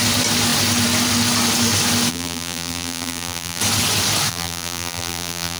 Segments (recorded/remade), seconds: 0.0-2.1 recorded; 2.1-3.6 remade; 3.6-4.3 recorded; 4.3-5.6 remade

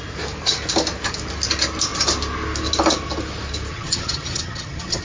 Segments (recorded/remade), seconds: 0.0-3.7 recorded; 3.7-5.0 remade

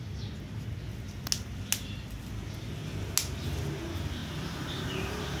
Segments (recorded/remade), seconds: 0.0-5.4 recorded

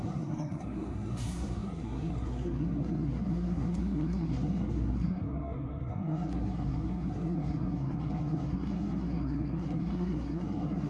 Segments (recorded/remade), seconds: 0.0-10.9 remade

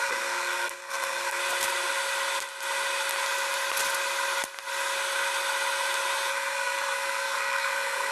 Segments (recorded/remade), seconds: 0.0-1.4 remade; 1.4-6.3 recorded; 6.3-8.1 remade